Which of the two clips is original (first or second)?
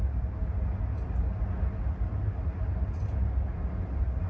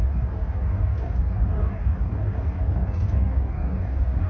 first